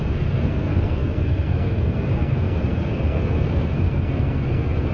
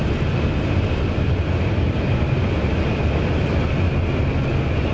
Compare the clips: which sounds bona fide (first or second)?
second